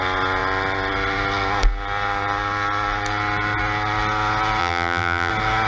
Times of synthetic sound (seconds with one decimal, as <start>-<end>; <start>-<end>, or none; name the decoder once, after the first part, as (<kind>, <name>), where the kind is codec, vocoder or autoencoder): 4.6-5.3 (vocoder, BigVGAN v2)